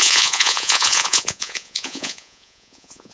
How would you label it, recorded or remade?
remade